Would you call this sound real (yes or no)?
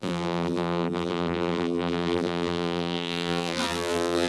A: no